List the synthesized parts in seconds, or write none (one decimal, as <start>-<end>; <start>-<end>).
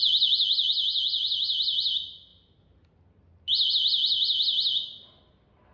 none